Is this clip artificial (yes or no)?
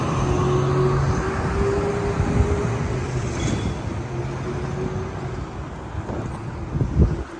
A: no